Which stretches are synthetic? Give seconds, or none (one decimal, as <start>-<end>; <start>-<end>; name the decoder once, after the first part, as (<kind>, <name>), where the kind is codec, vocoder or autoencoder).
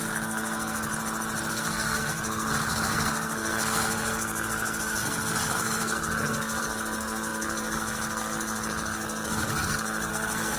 0.0-0.9 (codec, SNAC); 1.5-10.6